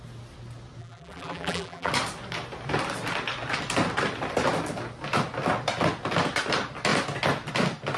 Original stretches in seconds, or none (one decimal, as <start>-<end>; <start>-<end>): 0.0-0.8; 1.9-8.0